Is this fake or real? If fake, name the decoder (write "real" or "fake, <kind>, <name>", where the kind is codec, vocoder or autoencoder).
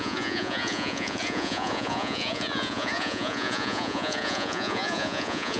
fake, vocoder, Vocos